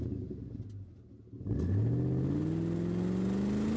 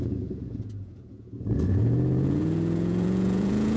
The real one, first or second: first